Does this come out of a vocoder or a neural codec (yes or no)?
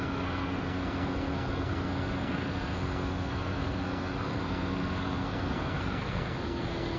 yes